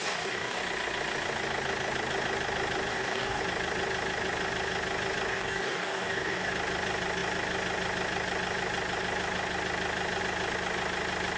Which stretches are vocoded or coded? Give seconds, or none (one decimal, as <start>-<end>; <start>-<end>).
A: 0.0-0.6; 2.9-3.4; 5.3-6.5